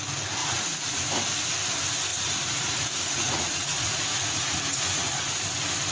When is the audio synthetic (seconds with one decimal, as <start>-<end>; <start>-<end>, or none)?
0.4-1.1; 2.1-5.4